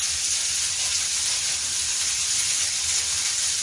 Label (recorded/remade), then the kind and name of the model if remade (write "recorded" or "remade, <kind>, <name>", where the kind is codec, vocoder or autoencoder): recorded